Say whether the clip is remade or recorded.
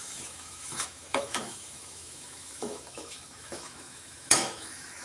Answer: remade